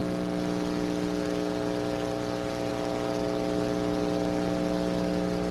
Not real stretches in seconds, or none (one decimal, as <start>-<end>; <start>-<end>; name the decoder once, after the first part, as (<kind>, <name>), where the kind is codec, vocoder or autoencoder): none